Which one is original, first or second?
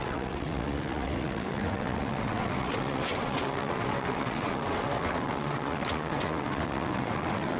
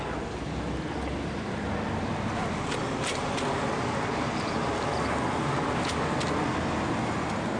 second